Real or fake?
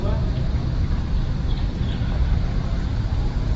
fake